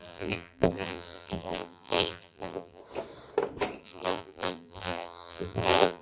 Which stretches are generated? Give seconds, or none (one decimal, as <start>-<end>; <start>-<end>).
0.0-2.8; 3.8-6.0